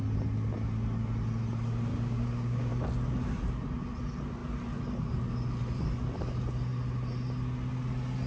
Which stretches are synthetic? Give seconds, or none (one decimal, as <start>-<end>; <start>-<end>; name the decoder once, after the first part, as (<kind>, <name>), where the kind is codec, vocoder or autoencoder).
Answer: 1.9-2.7 (codec, DAC)